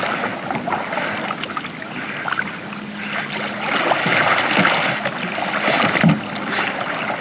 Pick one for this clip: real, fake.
real